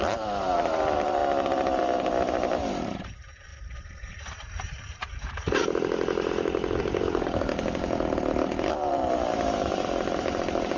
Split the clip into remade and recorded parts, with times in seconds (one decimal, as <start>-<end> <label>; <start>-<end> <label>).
0.0-1.2 remade; 1.2-1.8 recorded; 1.8-5.6 remade; 5.6-6.8 recorded; 6.8-7.5 remade; 7.5-8.7 recorded; 8.7-10.8 remade

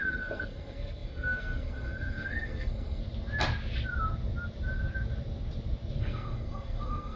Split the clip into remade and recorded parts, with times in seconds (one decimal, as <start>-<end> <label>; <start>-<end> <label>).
0.0-3.0 remade; 3.0-6.0 recorded; 6.0-7.2 remade

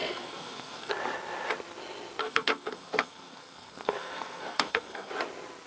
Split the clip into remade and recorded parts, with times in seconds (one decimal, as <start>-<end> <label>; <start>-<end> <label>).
0.0-0.9 remade; 0.9-2.2 recorded; 2.2-5.1 remade; 5.1-5.7 recorded

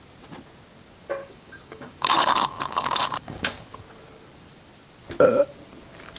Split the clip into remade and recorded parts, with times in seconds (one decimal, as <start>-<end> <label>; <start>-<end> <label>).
0.0-1.2 recorded; 1.2-3.8 remade; 3.8-6.2 recorded

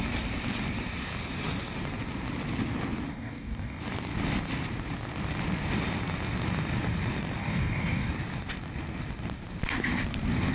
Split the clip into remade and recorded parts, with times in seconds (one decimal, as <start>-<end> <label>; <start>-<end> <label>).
0.0-3.1 recorded; 3.1-3.8 remade; 3.8-7.4 recorded; 7.4-8.1 remade; 8.1-10.5 recorded

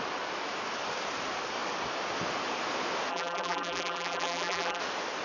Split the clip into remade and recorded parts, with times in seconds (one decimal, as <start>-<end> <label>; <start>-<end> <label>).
0.0-3.1 recorded; 3.1-4.8 remade; 4.8-5.2 recorded

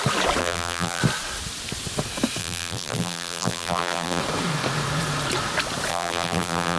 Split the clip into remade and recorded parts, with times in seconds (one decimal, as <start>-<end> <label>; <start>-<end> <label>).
0.0-0.4 recorded; 0.4-1.0 remade; 1.0-2.4 recorded; 2.4-4.2 remade; 4.2-5.9 recorded; 5.9-6.8 remade

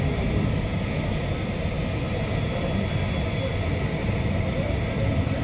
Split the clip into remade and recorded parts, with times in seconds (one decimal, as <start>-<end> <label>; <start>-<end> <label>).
0.0-0.7 remade; 0.7-3.7 recorded; 3.7-5.4 remade